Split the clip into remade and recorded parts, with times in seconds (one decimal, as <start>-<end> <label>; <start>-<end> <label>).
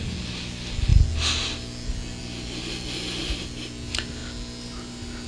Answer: 0.0-5.3 recorded